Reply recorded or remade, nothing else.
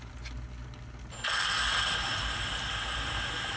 recorded